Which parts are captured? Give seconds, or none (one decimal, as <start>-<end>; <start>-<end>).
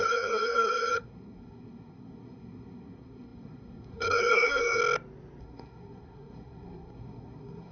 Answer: 4.8-5.4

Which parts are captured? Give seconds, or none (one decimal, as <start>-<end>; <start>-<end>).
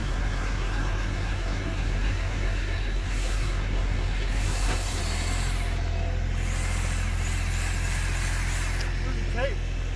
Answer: 5.0-10.0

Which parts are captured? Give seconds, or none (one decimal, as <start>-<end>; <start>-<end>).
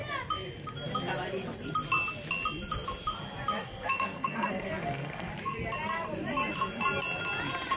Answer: 0.0-3.6; 5.3-7.8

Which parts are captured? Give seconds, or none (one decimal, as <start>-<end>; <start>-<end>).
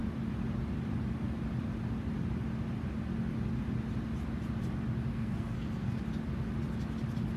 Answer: 0.0-5.1; 6.0-7.4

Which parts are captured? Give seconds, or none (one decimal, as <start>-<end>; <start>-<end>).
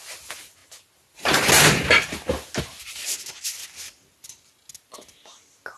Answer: 0.0-5.8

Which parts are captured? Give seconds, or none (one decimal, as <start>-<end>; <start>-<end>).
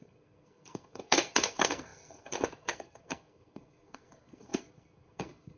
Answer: none